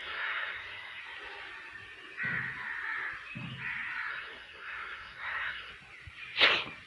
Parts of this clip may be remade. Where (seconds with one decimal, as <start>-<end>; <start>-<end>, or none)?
0.0-1.0; 4.1-5.7